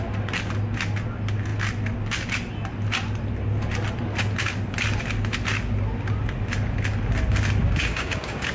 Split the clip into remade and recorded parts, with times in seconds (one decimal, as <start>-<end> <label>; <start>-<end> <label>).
0.0-7.6 recorded; 7.6-8.5 remade